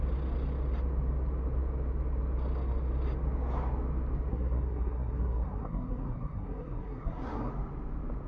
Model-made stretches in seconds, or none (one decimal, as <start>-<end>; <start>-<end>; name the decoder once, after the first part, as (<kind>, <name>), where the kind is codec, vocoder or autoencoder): 4.3-7.5 (codec, SNAC)